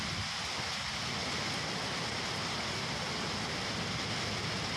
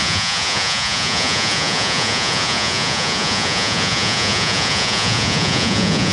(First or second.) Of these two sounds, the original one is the first